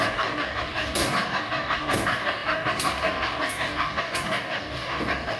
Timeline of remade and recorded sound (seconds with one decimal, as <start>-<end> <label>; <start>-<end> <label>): 0.0-5.4 remade